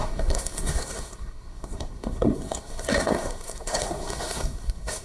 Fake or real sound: fake